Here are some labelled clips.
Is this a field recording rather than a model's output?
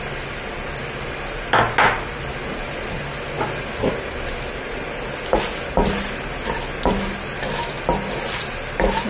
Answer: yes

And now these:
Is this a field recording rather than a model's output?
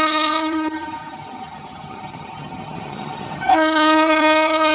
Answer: no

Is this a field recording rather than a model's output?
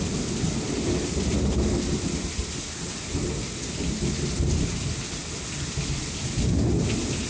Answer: yes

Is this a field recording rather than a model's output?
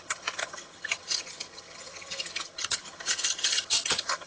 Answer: no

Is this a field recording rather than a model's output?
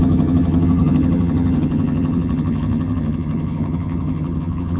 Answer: no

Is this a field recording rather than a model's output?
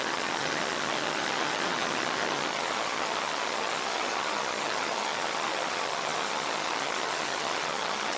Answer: no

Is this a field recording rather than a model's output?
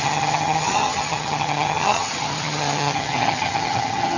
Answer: no